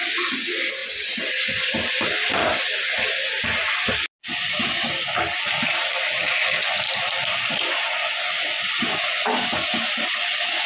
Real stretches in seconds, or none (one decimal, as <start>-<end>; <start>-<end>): 0.0-10.7